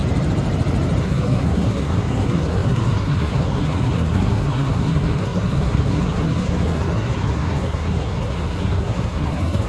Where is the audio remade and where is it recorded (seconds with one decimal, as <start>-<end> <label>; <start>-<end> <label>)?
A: 0.0-1.0 recorded; 1.0-9.7 remade